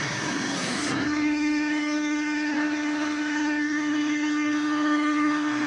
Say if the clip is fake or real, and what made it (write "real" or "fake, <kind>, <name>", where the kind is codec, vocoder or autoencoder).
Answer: fake, codec, SNAC